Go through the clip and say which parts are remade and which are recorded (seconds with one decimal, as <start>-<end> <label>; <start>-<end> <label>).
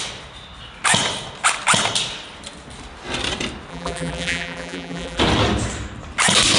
0.0-3.7 recorded; 3.7-5.2 remade; 5.2-6.6 recorded